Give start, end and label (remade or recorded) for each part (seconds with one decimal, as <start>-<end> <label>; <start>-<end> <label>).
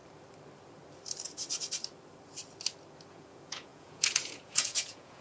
0.0-3.1 recorded; 3.1-5.2 remade